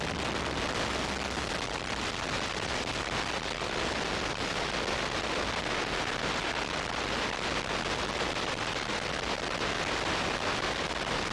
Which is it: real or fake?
real